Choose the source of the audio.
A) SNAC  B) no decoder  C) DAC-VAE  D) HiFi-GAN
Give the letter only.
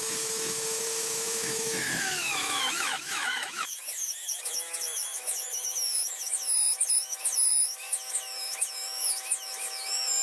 C